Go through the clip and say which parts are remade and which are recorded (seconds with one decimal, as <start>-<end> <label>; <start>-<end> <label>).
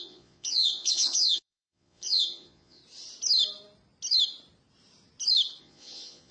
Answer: 0.0-2.8 remade; 2.8-5.6 recorded; 5.6-6.3 remade